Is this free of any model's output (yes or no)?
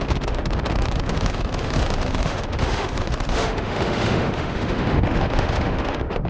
no